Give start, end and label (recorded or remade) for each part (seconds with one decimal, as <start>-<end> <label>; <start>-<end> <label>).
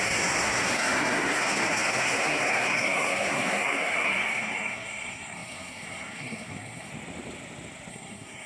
0.0-6.9 remade; 6.9-7.9 recorded; 7.9-8.5 remade